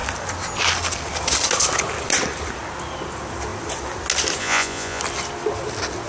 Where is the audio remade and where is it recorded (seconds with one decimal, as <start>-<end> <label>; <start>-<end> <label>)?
0.0-4.4 recorded; 4.4-5.0 remade; 5.0-6.1 recorded